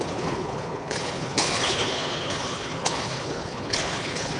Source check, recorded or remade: remade